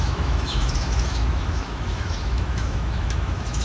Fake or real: fake